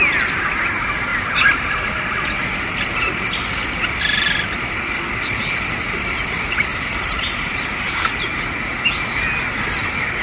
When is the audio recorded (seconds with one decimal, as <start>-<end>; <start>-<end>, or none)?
0.0-6.7; 8.4-10.2